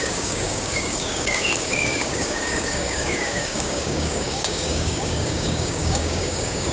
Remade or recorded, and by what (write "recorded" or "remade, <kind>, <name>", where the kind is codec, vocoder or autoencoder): remade, codec, DAC